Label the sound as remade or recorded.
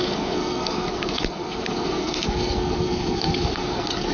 remade